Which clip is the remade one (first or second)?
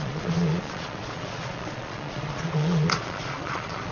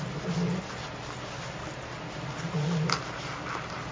first